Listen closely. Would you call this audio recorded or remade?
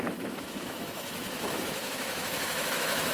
remade